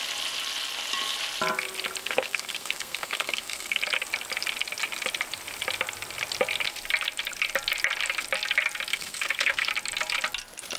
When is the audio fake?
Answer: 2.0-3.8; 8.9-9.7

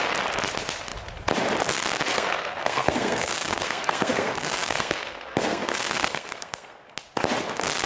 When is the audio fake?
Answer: 2.1-6.8

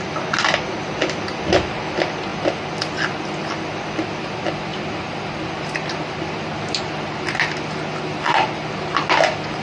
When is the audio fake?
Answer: none

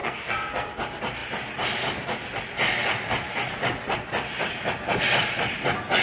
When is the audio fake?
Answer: 0.0-0.7

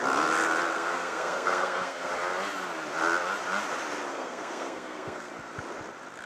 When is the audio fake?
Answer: 0.7-2.1; 4.1-5.3

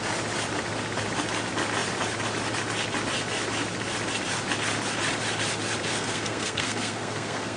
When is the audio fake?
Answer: 5.9-7.6

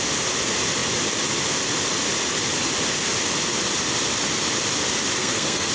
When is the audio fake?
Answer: 5.2-5.7